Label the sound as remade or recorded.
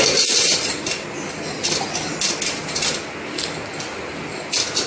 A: recorded